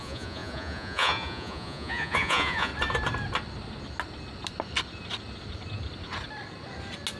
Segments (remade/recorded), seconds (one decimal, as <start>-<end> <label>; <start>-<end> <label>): 0.0-2.7 remade; 2.7-7.2 recorded